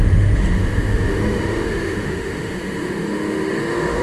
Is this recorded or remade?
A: remade